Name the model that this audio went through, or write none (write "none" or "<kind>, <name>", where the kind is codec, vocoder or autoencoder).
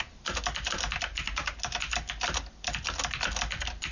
none